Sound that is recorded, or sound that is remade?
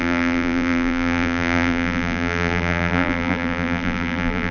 remade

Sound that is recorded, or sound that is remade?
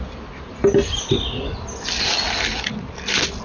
recorded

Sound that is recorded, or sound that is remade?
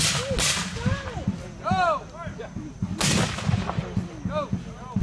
recorded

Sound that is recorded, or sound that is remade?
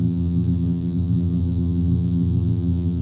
remade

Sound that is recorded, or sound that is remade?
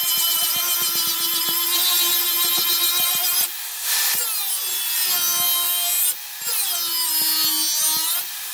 recorded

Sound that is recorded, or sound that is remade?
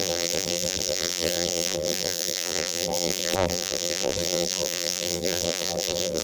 remade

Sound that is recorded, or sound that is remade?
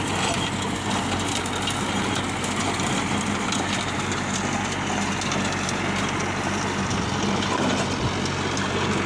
recorded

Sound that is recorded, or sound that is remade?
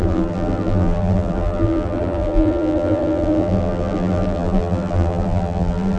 remade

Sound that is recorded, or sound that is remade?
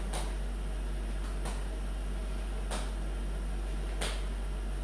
recorded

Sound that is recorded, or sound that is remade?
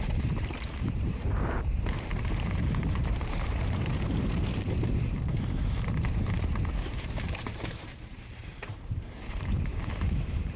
remade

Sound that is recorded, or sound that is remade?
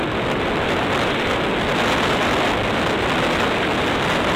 recorded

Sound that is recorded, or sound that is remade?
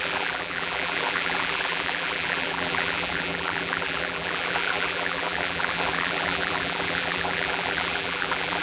remade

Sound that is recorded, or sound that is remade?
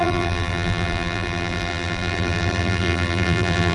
remade